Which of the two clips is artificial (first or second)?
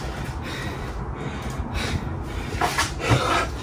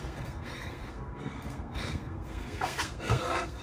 second